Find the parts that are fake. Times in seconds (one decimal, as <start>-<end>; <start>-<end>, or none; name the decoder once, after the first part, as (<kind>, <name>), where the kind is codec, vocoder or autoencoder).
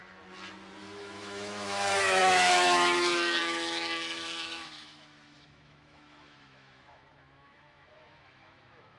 0.8-9.0 (autoencoder, DAC-VAE)